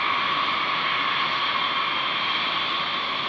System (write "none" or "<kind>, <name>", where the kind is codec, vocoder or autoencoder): none